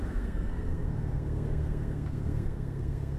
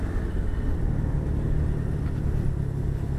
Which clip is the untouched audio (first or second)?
second